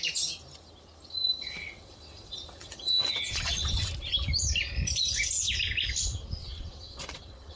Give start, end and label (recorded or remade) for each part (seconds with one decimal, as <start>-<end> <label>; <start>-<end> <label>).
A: 0.0-1.4 recorded; 1.4-3.9 remade; 3.9-6.4 recorded; 6.4-7.6 remade